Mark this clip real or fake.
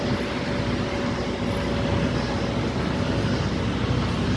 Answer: real